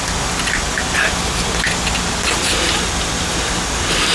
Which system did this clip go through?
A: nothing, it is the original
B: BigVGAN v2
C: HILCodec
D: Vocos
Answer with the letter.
A